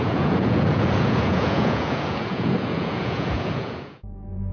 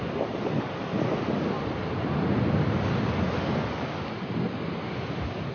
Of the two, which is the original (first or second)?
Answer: second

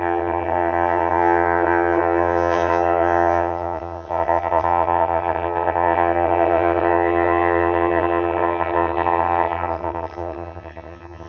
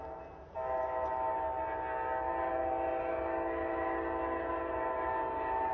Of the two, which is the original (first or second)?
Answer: second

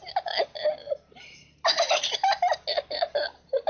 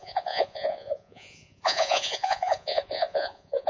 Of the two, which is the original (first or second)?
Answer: first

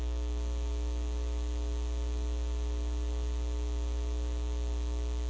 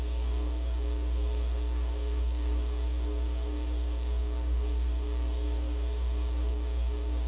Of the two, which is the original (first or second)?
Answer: first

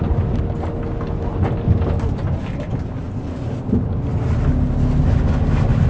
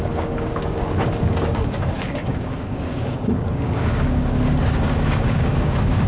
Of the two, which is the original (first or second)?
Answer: first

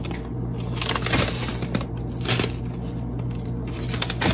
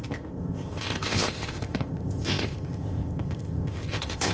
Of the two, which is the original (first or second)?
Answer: first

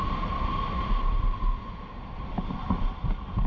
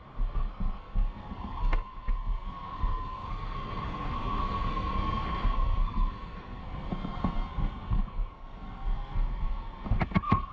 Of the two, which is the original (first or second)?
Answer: first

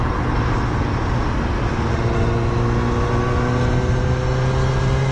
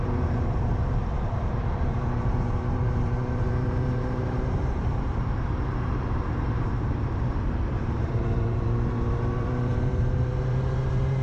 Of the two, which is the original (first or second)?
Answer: first